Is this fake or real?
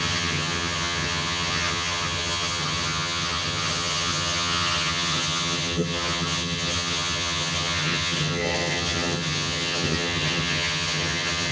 fake